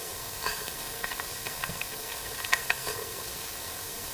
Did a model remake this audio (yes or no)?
yes